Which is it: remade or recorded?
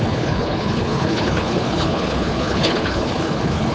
remade